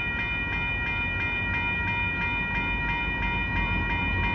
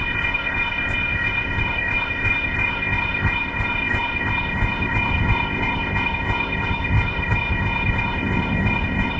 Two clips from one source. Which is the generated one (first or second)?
second